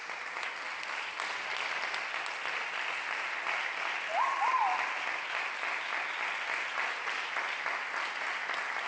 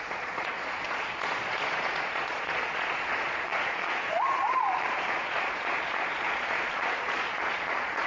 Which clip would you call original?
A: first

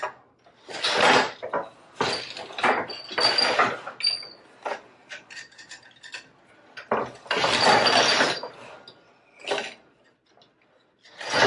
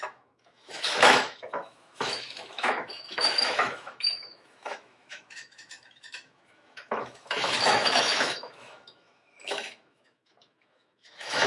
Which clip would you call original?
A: first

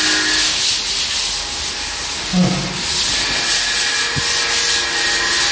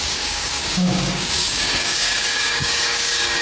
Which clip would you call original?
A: first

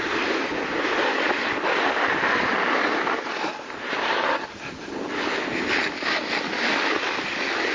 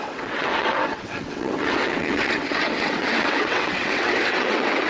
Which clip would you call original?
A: first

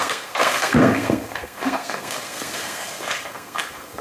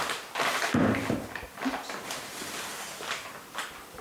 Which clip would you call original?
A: second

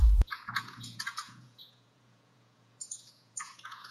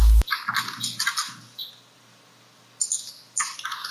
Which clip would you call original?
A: second